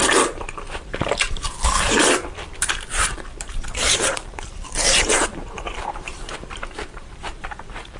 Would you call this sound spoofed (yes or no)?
yes